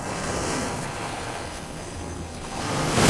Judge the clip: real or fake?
fake